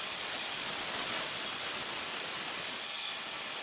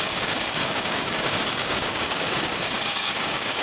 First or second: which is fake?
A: second